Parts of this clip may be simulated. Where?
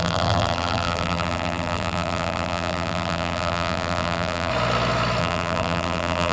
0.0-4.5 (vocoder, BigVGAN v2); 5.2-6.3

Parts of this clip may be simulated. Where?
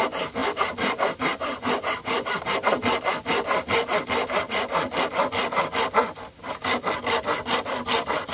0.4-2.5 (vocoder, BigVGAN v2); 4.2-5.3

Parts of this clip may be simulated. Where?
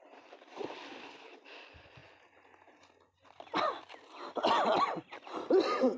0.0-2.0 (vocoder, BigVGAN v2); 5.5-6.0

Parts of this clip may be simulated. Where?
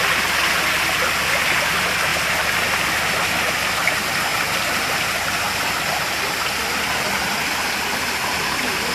2.1-3.5 (vocoder, BigVGAN v2); 6.6-7.5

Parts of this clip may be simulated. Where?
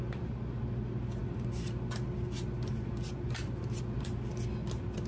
none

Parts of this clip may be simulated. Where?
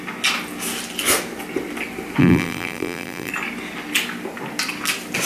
2.2-3.3 (vocoder, BigVGAN v2)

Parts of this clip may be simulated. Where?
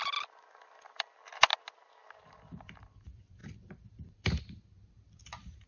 0.5-1.5 (vocoder, BigVGAN v2); 2.2-5.7